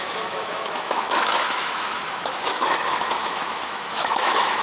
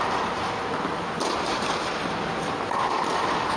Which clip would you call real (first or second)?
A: second